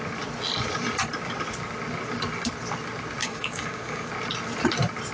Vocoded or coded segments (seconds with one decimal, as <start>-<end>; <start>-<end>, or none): 3.2-4.1